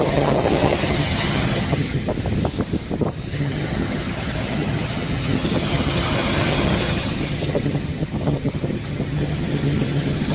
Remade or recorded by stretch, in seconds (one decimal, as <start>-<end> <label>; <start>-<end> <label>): 0.0-2.1 remade; 2.1-3.0 recorded; 3.0-10.3 remade